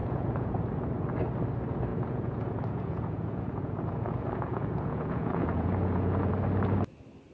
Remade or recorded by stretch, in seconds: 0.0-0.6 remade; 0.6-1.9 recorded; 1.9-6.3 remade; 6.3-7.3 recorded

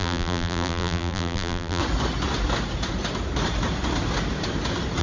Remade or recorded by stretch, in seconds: 0.0-1.8 remade; 1.8-5.0 recorded